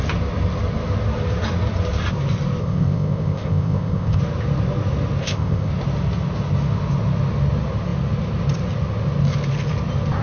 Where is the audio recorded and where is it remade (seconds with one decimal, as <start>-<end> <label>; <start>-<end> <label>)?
0.0-2.6 recorded; 2.6-4.2 remade; 4.2-5.2 recorded; 5.2-5.7 remade; 5.7-10.2 recorded